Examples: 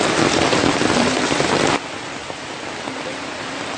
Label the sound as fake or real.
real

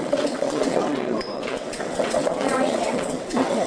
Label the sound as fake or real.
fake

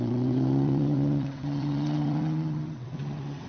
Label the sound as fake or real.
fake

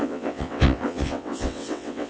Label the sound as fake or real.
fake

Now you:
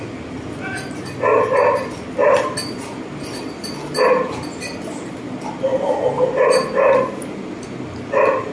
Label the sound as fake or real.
real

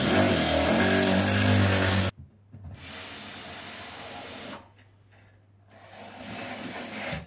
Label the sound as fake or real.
real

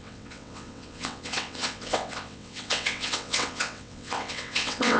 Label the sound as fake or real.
fake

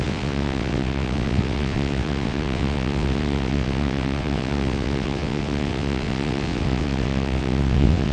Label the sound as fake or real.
fake